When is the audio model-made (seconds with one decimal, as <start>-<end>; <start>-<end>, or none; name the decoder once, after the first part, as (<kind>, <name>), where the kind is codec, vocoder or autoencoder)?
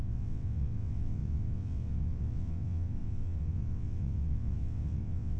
0.0-5.4 (vocoder, WaveNeXt)